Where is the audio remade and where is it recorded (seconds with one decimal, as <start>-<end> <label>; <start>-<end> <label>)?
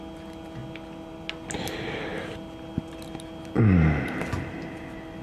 0.0-5.2 recorded